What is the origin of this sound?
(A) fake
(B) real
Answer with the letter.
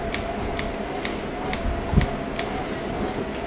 B